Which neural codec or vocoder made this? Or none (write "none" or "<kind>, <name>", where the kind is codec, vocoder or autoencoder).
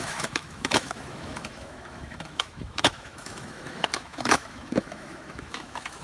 autoencoder, DAC-VAE